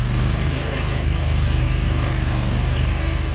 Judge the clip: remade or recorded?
remade